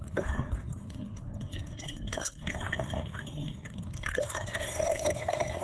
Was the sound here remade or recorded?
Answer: remade